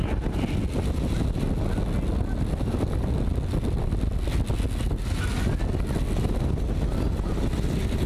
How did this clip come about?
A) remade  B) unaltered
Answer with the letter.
B